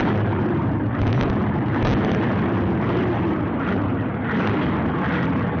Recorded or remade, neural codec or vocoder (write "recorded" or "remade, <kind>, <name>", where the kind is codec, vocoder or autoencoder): recorded